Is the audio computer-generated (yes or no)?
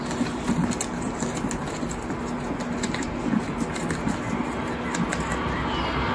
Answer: no